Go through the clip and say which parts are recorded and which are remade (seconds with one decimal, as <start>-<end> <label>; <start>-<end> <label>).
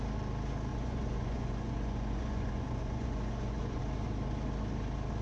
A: 0.0-0.7 recorded; 0.7-3.8 remade; 3.8-5.2 recorded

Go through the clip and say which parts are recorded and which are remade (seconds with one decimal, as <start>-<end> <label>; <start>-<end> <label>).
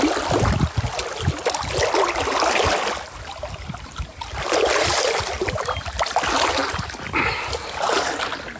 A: 0.0-8.6 recorded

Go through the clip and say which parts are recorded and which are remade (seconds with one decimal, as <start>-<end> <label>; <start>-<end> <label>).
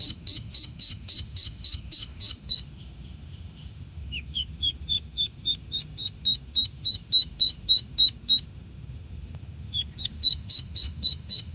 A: 0.0-11.5 remade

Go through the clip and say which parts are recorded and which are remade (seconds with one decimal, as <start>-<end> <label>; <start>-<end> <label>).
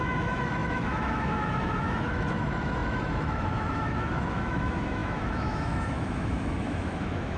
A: 0.0-7.4 remade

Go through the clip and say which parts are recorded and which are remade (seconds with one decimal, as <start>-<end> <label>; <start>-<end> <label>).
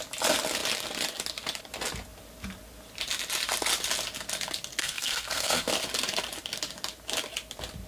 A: 0.0-4.8 recorded; 4.8-5.7 remade; 5.7-7.9 recorded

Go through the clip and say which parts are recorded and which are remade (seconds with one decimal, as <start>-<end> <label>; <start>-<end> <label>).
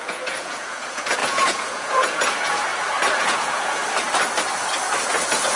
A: 0.0-2.7 remade; 2.7-3.2 recorded; 3.2-3.8 remade; 3.8-5.1 recorded; 5.1-5.6 remade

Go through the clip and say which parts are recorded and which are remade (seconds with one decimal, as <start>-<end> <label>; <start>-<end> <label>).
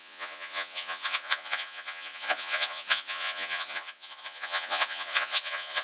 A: 0.0-5.8 remade